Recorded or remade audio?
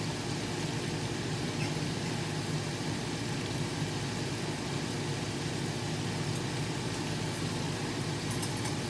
recorded